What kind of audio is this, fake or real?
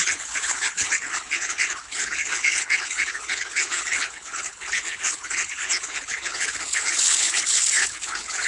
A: fake